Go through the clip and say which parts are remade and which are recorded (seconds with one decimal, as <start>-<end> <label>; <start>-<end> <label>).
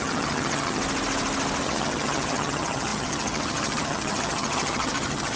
0.0-0.8 remade; 0.8-1.6 recorded; 1.6-5.4 remade